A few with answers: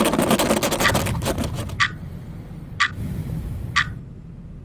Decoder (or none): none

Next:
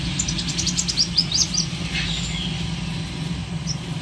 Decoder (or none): none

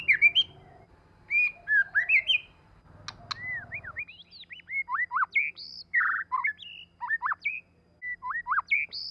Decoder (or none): none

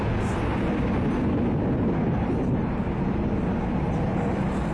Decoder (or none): none